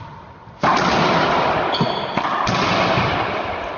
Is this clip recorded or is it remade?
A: recorded